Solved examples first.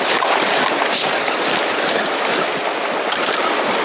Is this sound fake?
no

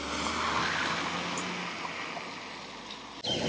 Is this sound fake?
no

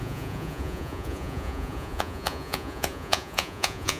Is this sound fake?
yes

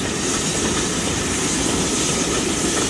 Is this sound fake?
no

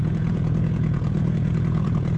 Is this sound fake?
yes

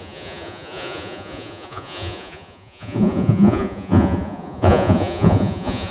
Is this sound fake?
yes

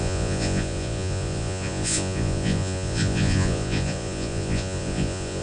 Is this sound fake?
yes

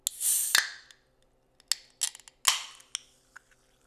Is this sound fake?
no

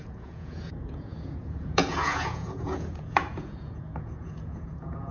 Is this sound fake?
yes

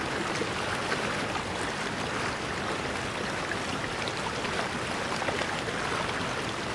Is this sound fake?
no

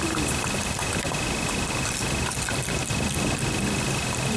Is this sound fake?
no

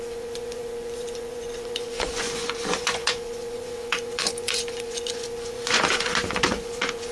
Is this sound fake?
yes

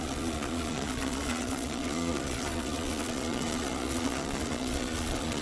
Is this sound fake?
yes